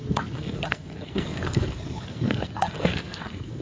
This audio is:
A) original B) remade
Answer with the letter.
B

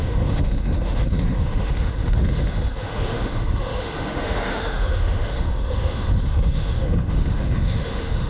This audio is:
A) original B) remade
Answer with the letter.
B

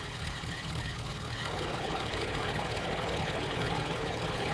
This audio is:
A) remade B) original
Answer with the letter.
A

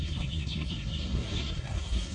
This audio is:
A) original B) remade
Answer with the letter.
B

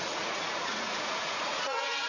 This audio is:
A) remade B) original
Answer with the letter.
A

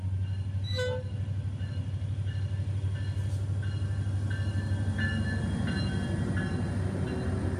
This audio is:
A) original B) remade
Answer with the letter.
A